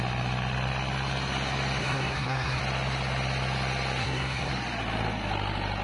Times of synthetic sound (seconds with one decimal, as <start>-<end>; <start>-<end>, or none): 1.8-2.6; 4.0-4.5